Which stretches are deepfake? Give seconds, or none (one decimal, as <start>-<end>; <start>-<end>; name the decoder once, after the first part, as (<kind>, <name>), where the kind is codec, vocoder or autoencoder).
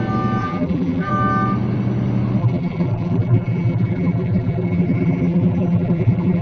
0.4-1.1 (vocoder, BigVGAN v2); 2.4-6.4